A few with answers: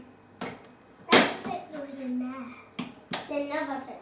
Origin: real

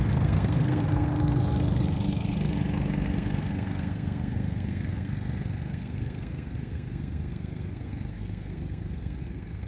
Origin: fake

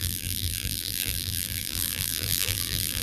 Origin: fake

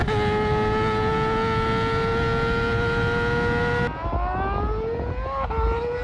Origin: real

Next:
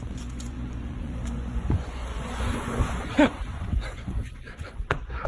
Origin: fake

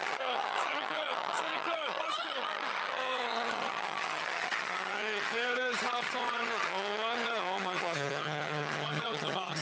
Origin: fake